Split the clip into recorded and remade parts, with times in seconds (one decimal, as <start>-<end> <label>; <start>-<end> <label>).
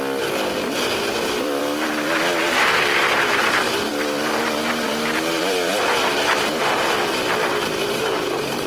0.0-8.7 recorded